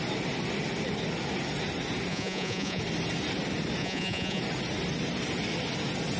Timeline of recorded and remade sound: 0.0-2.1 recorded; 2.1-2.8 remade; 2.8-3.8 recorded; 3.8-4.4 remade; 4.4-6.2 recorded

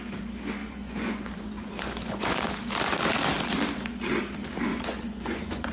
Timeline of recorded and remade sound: 0.0-0.6 recorded; 0.6-2.4 remade; 2.4-4.7 recorded; 4.7-5.7 remade